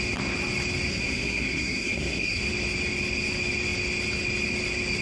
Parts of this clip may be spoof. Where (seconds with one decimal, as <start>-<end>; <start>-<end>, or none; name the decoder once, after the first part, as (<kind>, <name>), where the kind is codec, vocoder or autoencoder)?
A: 0.9-2.4 (codec, SNAC)